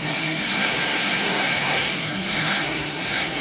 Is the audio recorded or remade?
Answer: remade